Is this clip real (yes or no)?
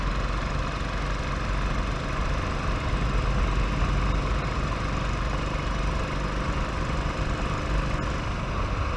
yes